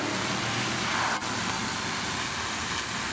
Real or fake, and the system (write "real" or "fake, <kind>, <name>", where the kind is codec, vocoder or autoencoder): fake, vocoder, BigVGAN v2